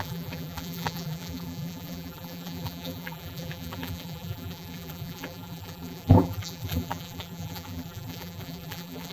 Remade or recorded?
remade